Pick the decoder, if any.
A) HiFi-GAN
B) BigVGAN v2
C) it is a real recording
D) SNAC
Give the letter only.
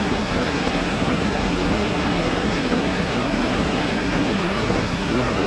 D